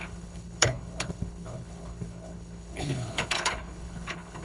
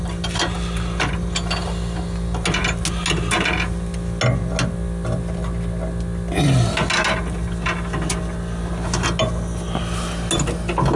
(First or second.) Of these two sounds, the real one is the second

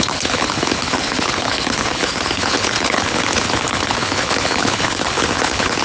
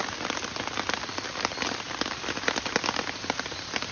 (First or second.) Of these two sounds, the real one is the second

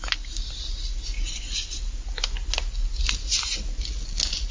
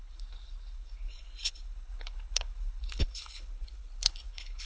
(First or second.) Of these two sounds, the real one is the first